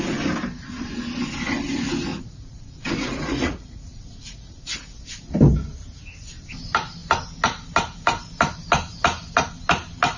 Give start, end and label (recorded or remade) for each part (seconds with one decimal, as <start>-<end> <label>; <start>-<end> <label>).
0.0-2.1 recorded; 2.1-4.6 remade; 4.6-10.2 recorded